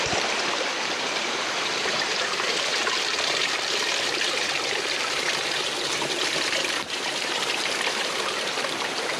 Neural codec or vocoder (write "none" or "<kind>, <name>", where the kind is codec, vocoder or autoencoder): vocoder, BigVGAN v2